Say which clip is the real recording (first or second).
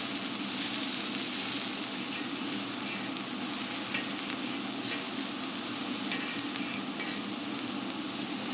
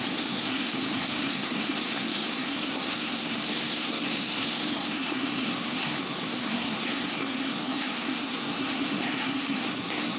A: first